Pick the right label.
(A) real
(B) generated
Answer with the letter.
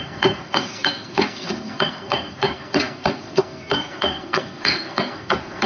B